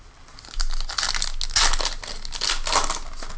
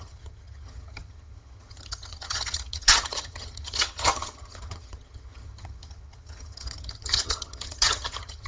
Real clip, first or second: first